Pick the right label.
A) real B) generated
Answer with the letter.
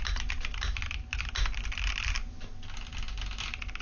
A